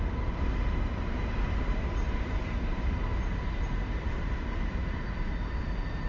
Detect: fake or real fake